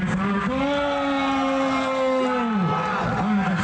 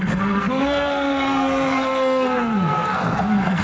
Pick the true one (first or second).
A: first